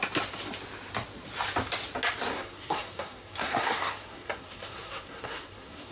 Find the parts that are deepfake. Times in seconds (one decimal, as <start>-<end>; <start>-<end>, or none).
2.3-5.9